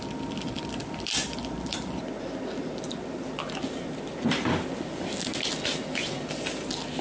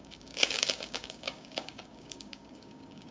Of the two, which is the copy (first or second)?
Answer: second